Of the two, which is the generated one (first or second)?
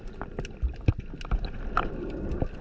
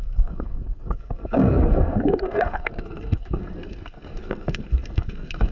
second